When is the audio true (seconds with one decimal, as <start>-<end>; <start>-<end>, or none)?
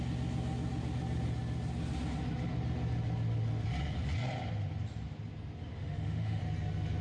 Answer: 0.0-5.7; 6.4-7.0